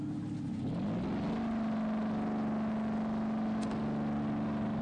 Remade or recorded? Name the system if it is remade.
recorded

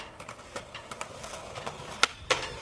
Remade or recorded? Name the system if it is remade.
recorded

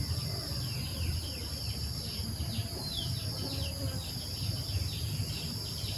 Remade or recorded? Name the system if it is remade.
recorded